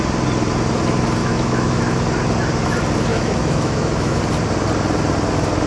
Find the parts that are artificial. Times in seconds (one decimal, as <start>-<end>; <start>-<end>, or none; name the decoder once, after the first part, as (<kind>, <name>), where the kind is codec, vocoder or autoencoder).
1.2-1.8 (autoencoder, DAC-VAE); 3.1-4.2